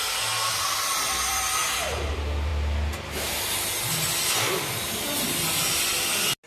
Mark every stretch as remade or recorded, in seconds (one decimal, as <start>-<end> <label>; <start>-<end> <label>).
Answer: 0.0-1.6 remade; 1.6-2.1 recorded; 2.1-2.5 remade; 2.5-6.5 recorded